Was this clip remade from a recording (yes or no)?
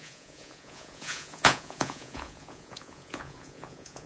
yes